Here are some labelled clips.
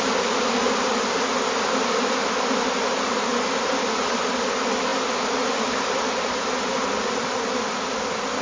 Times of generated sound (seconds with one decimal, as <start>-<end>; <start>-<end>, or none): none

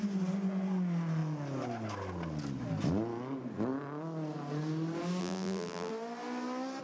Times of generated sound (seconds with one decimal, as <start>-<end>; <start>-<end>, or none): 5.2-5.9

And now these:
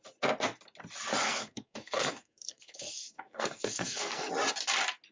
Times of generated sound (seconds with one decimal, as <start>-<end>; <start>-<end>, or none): 1.2-4.3

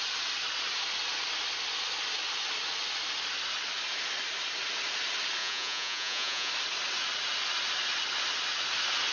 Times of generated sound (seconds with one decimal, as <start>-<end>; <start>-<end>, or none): 5.4-6.5

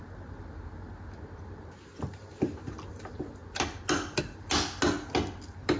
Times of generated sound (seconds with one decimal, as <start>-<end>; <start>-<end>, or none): none

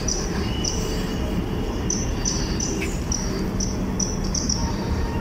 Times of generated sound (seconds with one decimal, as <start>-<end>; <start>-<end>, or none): 0.0-3.1; 4.6-5.2

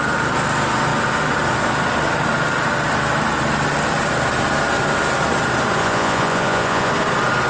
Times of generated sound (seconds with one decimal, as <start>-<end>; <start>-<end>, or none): 5.8-6.9

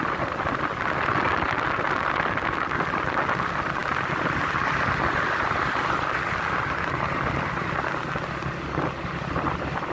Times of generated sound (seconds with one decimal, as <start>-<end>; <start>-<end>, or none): none